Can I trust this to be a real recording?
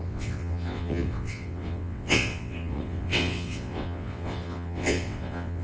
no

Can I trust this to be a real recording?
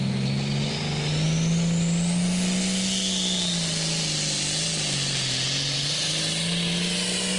yes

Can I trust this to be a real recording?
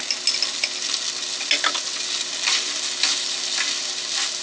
yes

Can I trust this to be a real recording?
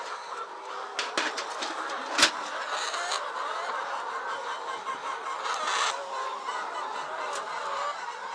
yes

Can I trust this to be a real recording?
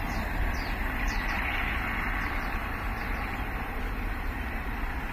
yes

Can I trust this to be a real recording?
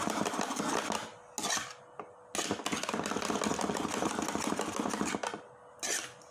yes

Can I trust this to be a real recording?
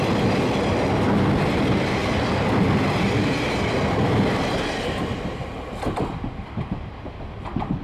yes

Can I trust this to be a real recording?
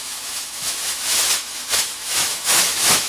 no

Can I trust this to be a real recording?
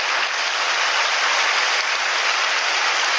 yes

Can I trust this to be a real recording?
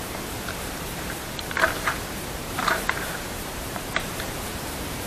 no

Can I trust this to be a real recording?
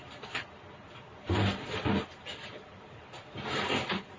no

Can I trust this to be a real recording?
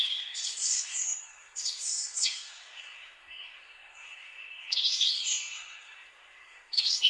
no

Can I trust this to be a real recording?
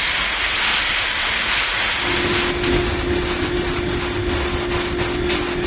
yes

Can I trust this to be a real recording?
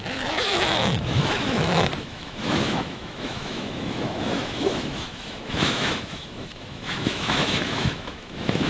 no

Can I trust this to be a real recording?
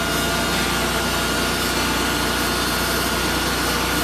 yes